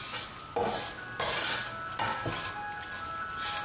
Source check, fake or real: real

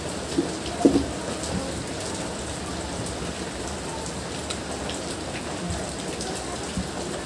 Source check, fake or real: fake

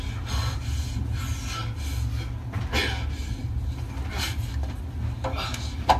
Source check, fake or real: real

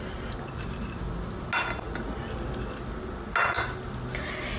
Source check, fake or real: real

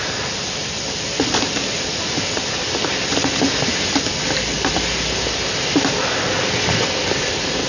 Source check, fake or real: fake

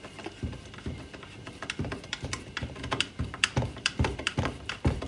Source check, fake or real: fake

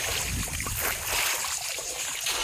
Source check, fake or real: real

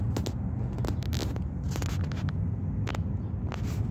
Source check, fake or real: real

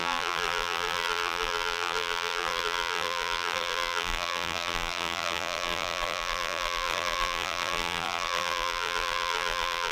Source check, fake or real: fake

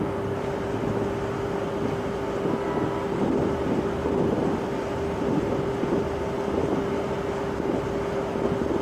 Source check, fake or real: real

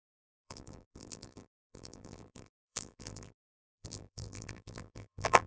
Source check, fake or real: fake